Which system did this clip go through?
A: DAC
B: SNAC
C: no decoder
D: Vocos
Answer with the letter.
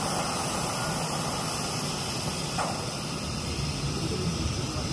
C